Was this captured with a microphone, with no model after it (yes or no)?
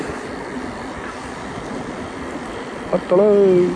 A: yes